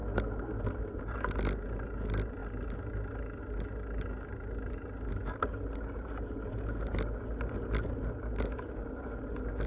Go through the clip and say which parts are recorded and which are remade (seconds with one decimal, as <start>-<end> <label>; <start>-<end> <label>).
0.0-9.7 recorded